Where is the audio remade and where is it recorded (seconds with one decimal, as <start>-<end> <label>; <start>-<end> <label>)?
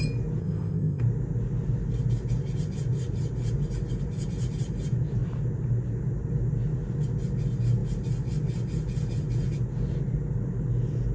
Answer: 0.0-0.4 recorded; 0.4-1.0 remade; 1.0-11.1 recorded